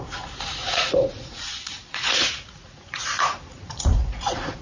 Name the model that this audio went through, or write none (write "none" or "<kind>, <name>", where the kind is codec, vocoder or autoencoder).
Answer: vocoder, Vocos